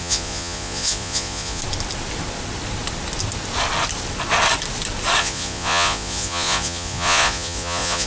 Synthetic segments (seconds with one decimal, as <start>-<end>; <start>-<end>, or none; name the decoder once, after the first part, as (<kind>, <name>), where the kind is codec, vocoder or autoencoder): 0.0-1.6 (vocoder, Vocos); 5.2-8.1